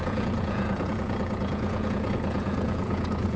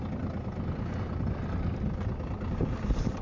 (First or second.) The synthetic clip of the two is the first